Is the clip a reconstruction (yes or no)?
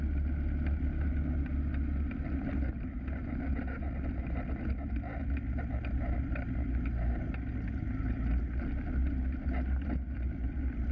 no